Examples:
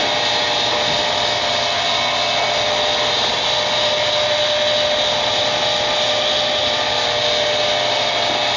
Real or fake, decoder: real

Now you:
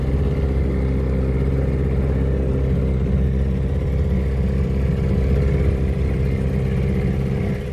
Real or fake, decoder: real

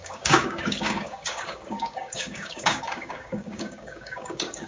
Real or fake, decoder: fake, codec, DAC